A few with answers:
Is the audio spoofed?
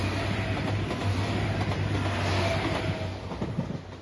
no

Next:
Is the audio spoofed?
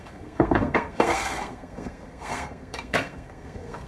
yes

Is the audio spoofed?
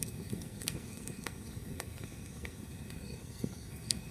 yes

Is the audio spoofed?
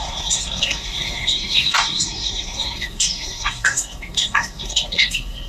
yes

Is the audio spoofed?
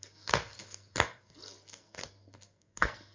yes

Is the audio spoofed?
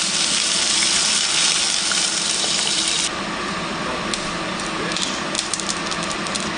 no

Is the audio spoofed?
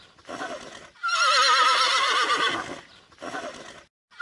no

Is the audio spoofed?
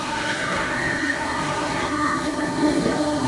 yes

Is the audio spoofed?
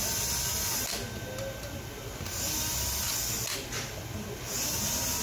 no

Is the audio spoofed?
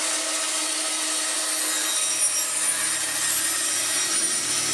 no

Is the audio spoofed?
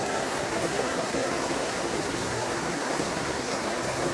yes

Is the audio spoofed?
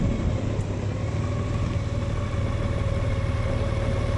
no